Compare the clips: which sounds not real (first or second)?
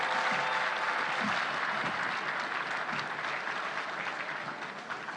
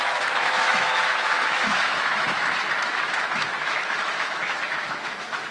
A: second